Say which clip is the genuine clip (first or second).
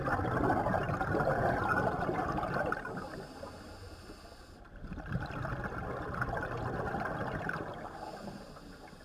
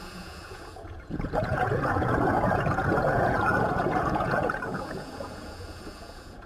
first